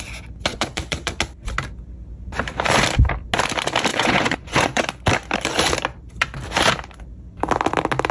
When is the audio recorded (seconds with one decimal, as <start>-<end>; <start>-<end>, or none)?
0.0-0.5; 1.1-3.9; 4.8-8.1